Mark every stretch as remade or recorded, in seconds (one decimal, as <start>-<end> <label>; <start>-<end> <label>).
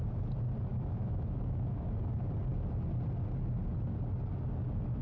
0.0-0.7 recorded; 0.7-1.9 remade; 1.9-5.0 recorded